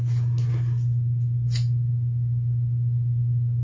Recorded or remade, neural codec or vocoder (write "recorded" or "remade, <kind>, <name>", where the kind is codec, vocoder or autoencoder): recorded